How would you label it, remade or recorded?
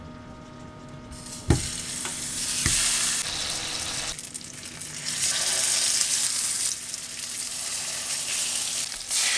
recorded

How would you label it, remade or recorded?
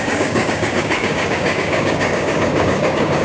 remade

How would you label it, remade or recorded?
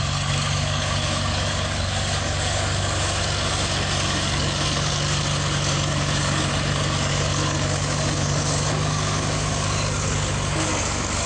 remade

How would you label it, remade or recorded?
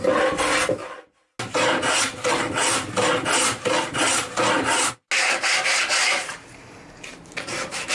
recorded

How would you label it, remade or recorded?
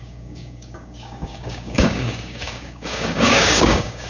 remade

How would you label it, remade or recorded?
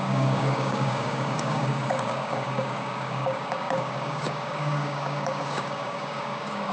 remade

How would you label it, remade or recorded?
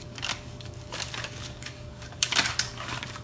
remade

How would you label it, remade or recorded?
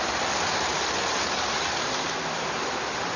recorded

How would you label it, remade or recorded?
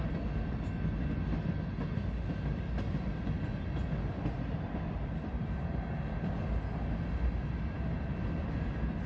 recorded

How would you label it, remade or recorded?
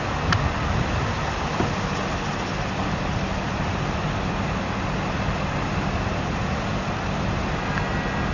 recorded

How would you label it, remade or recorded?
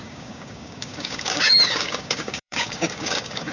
remade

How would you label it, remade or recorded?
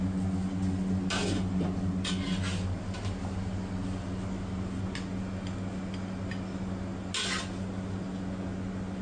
recorded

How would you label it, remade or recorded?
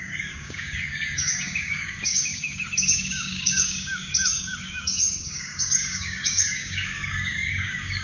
remade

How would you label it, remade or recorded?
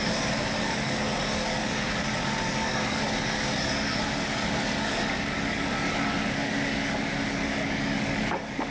remade